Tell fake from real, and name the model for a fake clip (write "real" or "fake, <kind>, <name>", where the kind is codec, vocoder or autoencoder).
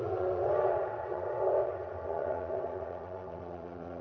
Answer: fake, vocoder, WaveNeXt